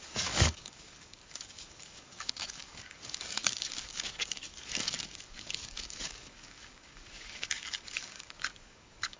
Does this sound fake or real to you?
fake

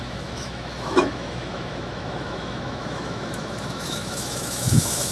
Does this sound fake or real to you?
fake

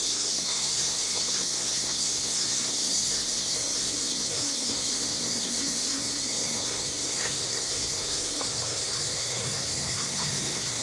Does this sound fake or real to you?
fake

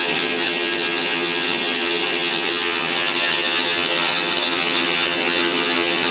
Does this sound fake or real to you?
fake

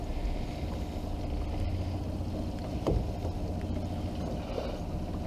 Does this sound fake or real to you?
real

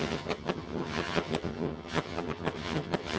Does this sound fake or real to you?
fake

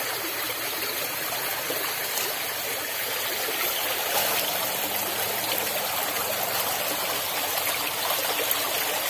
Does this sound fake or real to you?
real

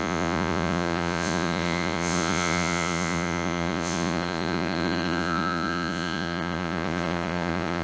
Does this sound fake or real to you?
fake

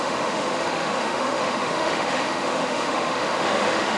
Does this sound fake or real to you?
fake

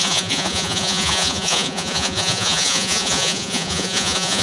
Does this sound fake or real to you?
fake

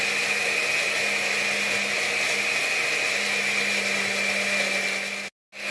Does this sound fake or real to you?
real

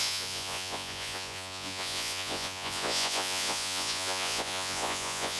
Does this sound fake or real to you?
fake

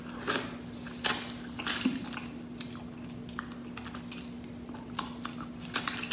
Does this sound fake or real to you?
real